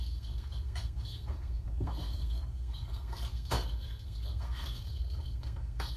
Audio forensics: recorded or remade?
remade